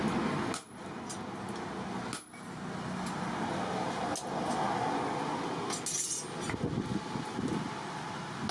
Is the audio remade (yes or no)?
no